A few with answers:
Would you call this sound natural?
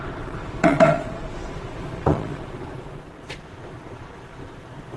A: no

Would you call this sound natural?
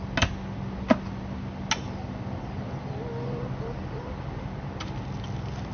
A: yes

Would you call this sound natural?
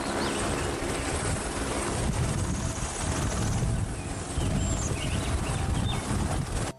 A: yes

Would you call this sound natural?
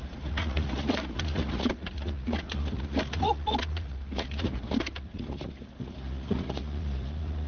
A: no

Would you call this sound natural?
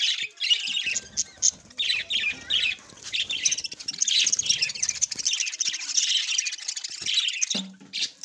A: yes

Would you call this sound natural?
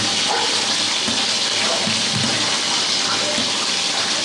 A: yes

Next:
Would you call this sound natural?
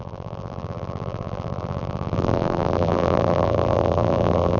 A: no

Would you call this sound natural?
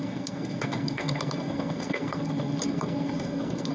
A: no